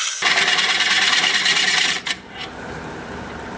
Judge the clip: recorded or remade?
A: remade